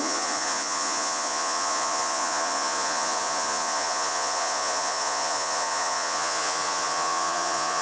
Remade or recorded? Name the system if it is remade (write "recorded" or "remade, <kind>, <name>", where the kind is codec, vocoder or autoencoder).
remade, vocoder, Vocos